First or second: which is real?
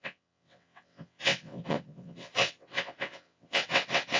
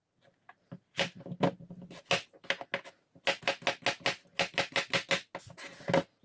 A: second